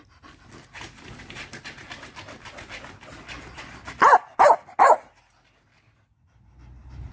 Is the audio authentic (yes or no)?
yes